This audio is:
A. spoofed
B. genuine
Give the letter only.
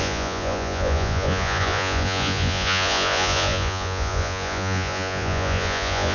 A